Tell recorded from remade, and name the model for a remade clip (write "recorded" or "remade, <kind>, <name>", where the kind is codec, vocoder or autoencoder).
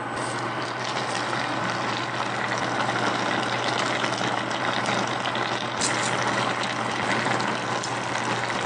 recorded